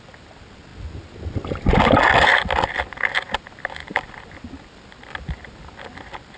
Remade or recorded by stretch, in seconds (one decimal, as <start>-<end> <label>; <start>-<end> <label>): 0.0-6.4 recorded